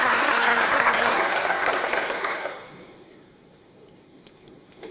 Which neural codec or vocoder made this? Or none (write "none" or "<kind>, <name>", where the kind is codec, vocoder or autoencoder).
codec, SNAC